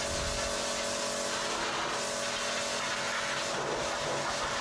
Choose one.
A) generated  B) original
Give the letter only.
B